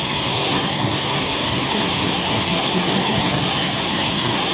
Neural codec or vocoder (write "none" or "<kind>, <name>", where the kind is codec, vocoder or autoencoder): codec, SNAC